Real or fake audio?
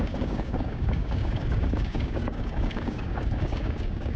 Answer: fake